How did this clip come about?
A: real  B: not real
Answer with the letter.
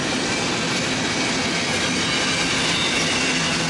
A